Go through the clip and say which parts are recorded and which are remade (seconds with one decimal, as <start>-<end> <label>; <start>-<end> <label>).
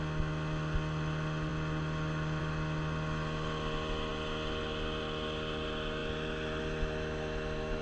0.0-7.8 recorded